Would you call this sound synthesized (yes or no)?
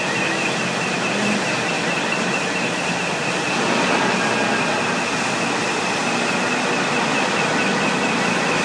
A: no